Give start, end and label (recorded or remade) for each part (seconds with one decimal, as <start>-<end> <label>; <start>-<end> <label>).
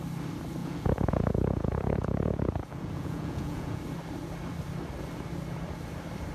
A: 0.0-0.6 recorded; 0.6-3.8 remade; 3.8-6.3 recorded